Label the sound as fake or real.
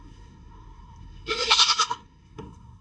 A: fake